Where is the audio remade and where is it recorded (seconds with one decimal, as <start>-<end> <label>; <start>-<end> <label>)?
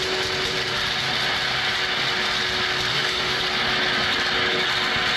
0.0-2.9 recorded; 2.9-3.4 remade; 3.4-5.2 recorded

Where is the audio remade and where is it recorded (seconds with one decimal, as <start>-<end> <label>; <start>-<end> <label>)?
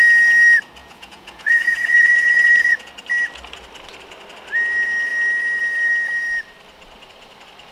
0.0-0.8 recorded; 0.8-2.9 remade; 2.9-7.7 recorded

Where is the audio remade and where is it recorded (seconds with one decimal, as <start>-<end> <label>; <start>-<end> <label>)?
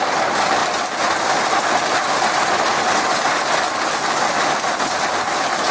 0.0-5.7 recorded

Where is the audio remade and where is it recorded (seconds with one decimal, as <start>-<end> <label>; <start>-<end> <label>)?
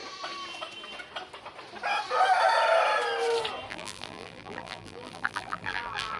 0.0-3.7 recorded; 3.7-6.2 remade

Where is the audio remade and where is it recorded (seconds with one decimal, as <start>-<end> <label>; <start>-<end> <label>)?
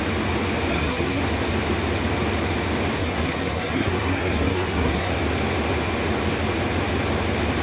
0.0-0.7 recorded; 0.7-1.2 remade; 1.2-3.0 recorded; 3.0-5.1 remade; 5.1-7.6 recorded